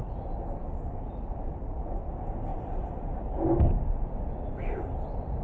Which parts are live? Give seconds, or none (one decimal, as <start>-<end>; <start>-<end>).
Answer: 0.0-0.6; 1.1-5.4